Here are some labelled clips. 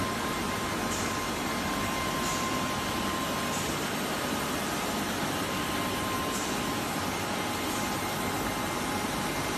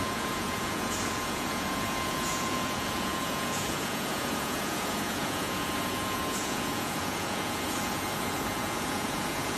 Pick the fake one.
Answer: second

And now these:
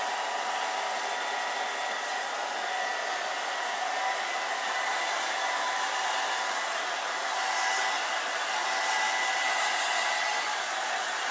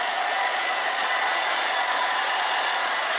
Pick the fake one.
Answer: second